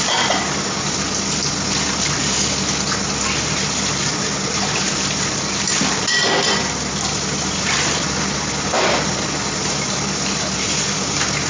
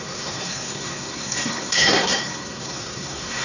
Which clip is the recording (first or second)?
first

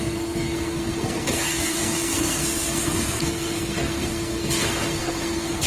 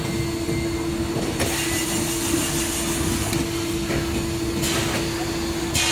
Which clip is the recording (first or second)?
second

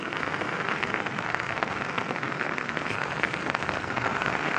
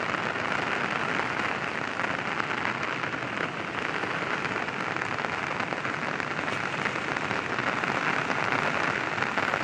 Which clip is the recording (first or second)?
second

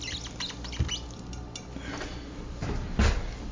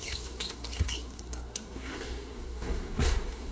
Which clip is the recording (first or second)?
first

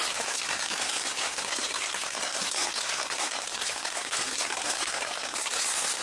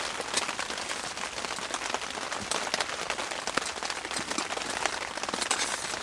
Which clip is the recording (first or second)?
second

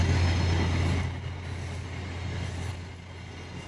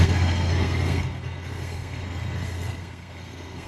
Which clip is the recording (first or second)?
first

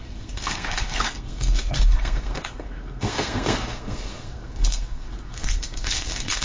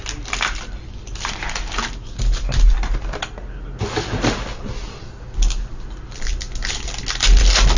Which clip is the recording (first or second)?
second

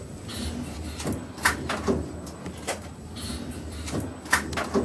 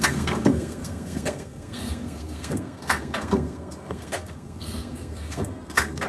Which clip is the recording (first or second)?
first